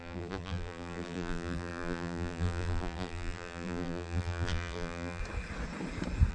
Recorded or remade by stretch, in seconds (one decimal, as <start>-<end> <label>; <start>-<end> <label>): 0.0-5.2 remade; 5.2-6.3 recorded